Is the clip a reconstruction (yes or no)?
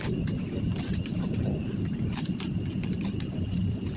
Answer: no